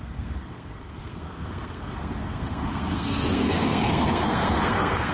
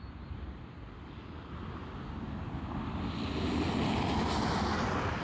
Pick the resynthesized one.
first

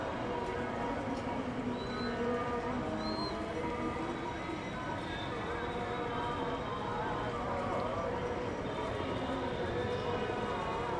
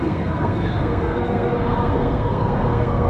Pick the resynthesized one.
second